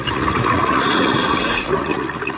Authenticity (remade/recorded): remade